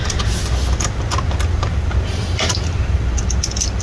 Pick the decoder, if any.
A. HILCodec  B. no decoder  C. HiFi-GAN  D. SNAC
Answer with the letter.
B